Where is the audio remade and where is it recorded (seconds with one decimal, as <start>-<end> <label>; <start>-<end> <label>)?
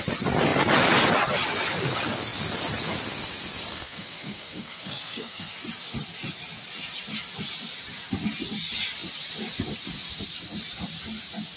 0.0-3.7 recorded; 3.7-5.5 remade; 5.5-11.6 recorded